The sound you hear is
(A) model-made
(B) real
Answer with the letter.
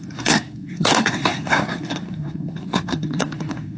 A